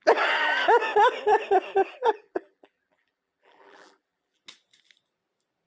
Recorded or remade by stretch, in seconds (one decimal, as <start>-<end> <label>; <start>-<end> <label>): 0.0-2.1 recorded; 2.1-4.4 remade; 4.4-5.7 recorded